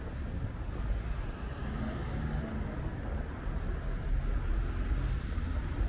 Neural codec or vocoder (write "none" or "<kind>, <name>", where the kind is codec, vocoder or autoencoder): none